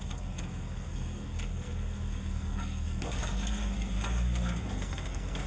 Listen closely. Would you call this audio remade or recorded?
remade